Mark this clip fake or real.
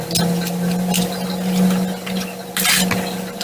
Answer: real